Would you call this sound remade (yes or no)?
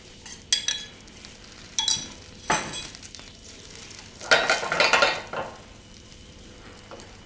no